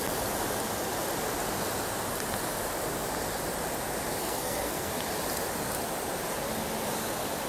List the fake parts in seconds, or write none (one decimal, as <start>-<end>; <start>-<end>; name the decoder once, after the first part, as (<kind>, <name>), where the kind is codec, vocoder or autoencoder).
4.2-4.9 (codec, SNAC)